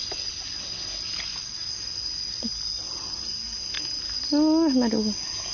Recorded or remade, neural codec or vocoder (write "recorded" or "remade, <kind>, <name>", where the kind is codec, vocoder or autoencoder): recorded